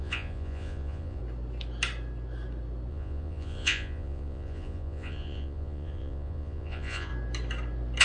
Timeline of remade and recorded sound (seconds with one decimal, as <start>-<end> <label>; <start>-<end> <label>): 0.0-1.2 remade; 1.2-2.9 recorded; 2.9-7.1 remade; 7.1-8.0 recorded